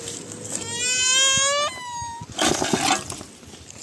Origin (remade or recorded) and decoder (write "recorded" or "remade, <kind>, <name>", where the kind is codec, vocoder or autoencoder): recorded